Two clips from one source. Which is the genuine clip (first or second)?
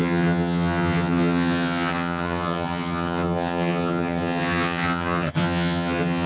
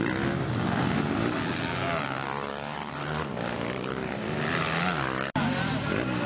second